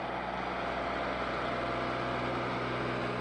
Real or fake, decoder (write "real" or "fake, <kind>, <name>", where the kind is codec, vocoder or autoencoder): real